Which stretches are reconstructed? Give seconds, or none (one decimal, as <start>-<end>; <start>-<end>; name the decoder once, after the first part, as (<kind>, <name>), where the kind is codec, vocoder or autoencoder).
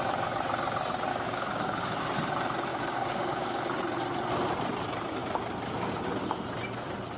1.1-1.8 (codec, DAC); 2.7-3.6